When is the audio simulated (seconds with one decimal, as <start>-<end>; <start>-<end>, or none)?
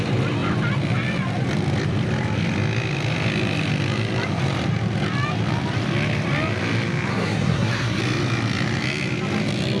7.1-8.0